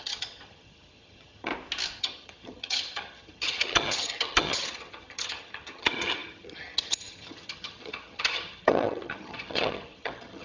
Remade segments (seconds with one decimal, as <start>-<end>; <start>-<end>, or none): 0.0-1.5; 2.0-10.4